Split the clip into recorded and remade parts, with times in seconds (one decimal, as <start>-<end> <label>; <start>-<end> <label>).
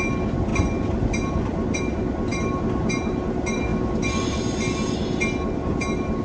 0.0-6.2 recorded